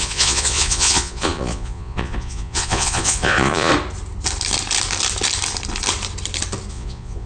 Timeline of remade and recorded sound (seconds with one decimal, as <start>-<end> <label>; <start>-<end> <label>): 0.0-3.7 remade; 3.7-6.7 recorded; 6.7-7.3 remade